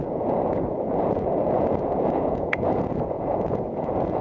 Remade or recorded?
remade